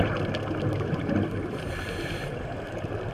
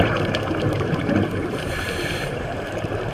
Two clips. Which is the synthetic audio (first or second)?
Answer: second